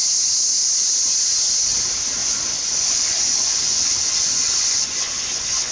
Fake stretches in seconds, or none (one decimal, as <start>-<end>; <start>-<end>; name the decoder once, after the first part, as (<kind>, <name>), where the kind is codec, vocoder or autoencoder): 2.2-5.7 (vocoder, Vocos)